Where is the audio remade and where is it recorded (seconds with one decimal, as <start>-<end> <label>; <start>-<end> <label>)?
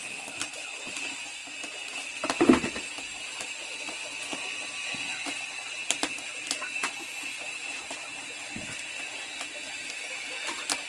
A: 0.0-10.9 recorded